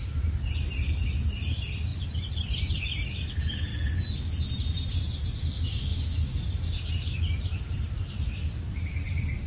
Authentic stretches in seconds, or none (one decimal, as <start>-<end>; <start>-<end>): 3.7-4.5; 5.9-6.7